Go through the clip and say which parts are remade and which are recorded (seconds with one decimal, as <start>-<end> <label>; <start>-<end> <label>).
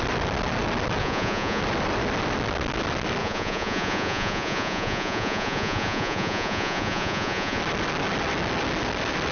0.0-1.0 recorded; 1.0-1.6 remade; 1.6-3.2 recorded; 3.2-7.6 remade; 7.6-9.3 recorded